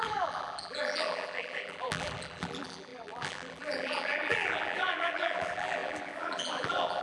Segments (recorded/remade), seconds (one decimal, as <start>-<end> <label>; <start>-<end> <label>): 0.0-7.0 remade